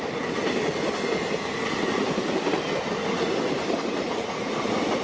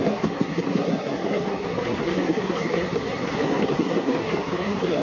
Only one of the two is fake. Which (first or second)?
second